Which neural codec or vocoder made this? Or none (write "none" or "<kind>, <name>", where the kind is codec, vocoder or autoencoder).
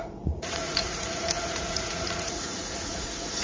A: vocoder, Vocos